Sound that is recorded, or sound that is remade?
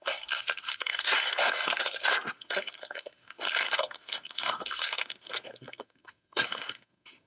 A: remade